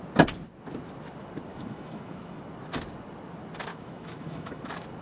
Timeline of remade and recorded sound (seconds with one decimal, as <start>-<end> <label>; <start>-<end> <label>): 0.0-1.5 recorded; 1.5-2.4 remade; 2.4-3.7 recorded; 3.7-4.6 remade; 4.6-5.0 recorded